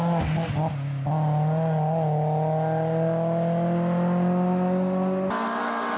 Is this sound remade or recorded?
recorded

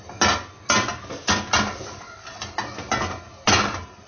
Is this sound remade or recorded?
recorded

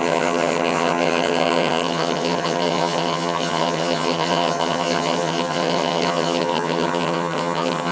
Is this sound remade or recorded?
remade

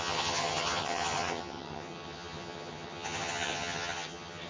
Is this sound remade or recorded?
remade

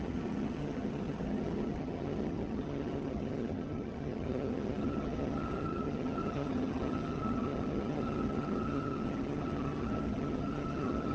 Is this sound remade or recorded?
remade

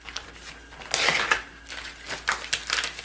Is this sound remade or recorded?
recorded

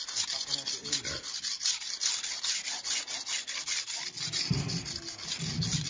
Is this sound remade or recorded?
recorded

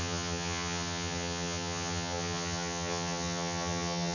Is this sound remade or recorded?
remade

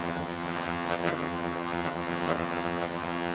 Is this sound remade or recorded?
remade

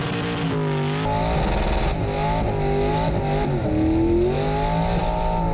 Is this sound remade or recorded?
recorded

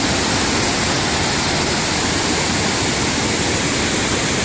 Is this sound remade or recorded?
recorded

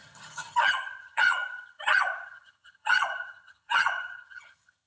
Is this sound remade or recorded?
remade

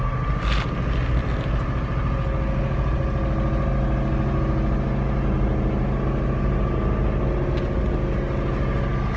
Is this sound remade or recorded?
recorded